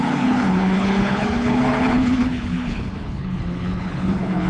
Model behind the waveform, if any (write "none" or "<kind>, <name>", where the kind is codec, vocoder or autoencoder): codec, HILCodec